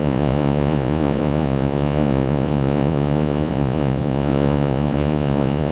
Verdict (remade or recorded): remade